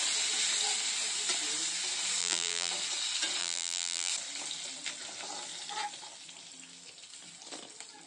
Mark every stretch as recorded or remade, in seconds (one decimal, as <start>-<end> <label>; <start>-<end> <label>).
0.0-2.2 recorded; 2.2-2.7 remade; 2.7-3.4 recorded; 3.4-4.1 remade; 4.1-8.1 recorded